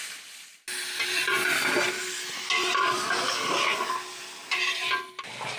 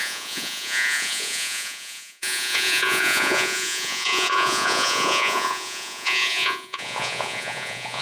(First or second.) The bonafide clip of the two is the first